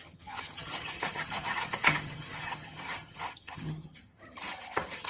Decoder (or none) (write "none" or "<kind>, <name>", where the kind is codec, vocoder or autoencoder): vocoder, HiFi-GAN